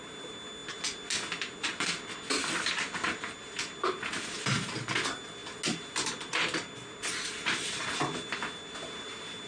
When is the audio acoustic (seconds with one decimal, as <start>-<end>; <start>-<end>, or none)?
0.0-9.5